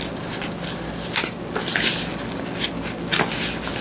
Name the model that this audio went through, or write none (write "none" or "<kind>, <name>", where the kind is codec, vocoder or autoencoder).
none